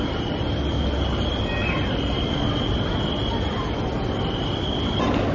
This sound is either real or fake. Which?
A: real